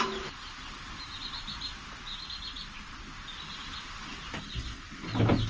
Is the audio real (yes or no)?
yes